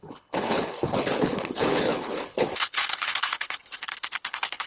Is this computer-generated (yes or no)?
yes